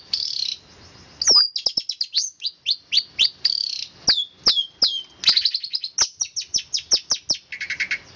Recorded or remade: recorded